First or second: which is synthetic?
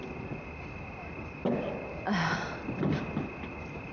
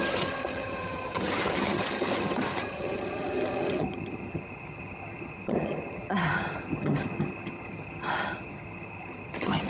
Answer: second